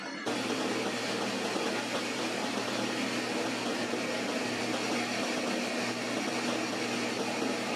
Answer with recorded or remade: recorded